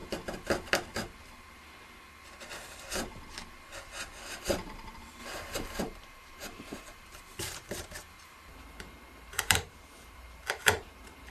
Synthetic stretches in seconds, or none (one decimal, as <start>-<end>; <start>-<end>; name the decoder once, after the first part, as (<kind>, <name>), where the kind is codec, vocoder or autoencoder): 4.4-11.3 (vocoder, BigVGAN v2)